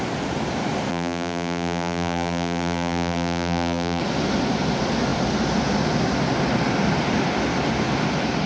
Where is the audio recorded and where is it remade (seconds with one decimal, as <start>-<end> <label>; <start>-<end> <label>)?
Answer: 0.0-0.9 recorded; 0.9-4.0 remade; 4.0-8.5 recorded